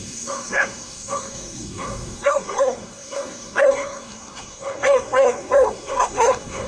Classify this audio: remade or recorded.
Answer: remade